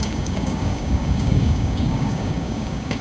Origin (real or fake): fake